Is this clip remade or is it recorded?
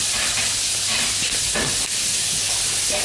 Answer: recorded